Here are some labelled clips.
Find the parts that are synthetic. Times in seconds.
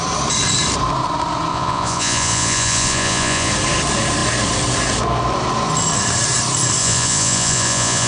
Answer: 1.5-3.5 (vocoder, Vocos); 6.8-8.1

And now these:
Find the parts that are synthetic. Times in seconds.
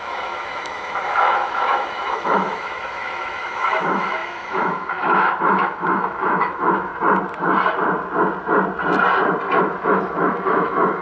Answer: 0.0-6.9 (autoencoder, DAC-VAE); 9.9-11.0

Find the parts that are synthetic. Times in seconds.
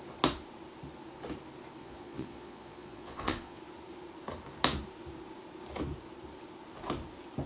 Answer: 1.8-3.6 (vocoder, Vocos)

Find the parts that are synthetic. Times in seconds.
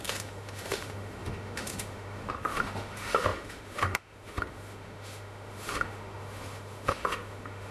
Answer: 0.0-7.7 (autoencoder, DAC-VAE)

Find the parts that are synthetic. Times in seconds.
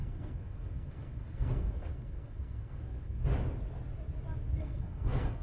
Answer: 0.0-3.2 (codec, SNAC); 4.6-5.4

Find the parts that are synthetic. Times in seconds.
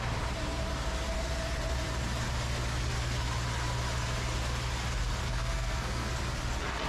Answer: 5.2-6.1 (codec, SNAC)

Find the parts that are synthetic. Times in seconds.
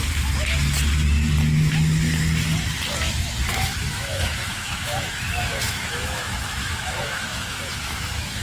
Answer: 3.5-8.4 (autoencoder, DAC-VAE)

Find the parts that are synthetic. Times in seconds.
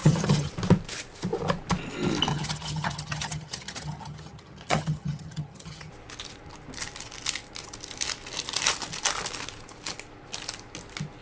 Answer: 0.0-0.5 (vocoder, HiFi-GAN); 2.3-5.9